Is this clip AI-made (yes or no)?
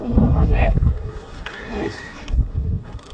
yes